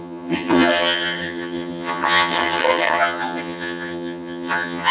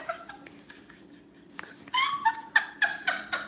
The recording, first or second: second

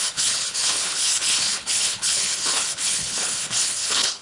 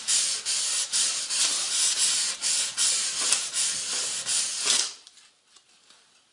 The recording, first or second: second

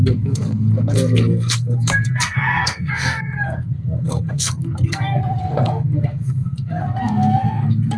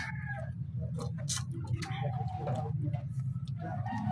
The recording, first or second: second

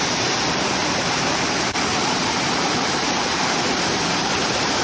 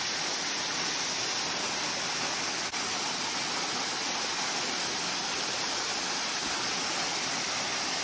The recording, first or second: second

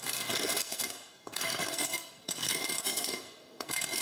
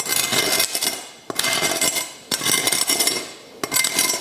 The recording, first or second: second